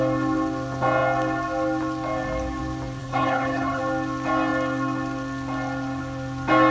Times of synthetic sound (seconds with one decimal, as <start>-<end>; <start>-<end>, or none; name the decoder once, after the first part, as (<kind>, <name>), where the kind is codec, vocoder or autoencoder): 3.0-3.8 (codec, HILCodec)

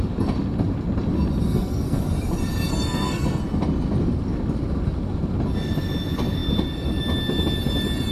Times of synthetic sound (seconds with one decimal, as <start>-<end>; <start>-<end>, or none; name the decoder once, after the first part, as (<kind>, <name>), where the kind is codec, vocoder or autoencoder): 1.5-2.0 (codec, SNAC); 2.7-3.4

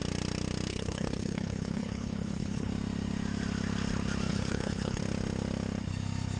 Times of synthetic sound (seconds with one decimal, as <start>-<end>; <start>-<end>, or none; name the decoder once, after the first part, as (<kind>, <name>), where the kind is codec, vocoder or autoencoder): 0.7-2.7 (codec, HILCodec); 4.3-5.0